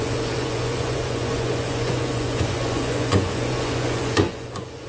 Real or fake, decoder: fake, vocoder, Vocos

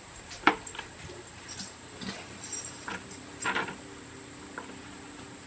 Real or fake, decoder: real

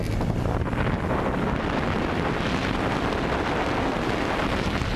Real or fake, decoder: real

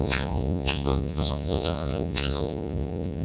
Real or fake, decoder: fake, vocoder, Vocos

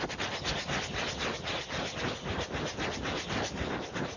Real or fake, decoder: real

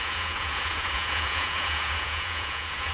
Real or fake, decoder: fake, vocoder, Vocos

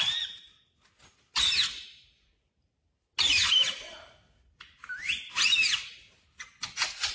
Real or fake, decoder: real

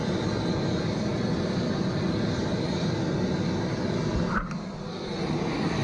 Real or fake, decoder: real